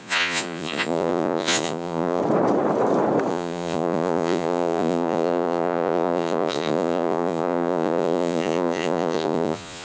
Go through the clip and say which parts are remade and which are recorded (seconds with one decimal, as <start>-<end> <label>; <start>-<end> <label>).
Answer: 0.0-2.2 remade; 2.2-3.3 recorded; 3.3-9.8 remade